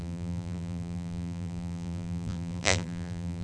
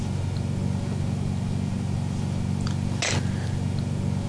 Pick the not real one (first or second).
first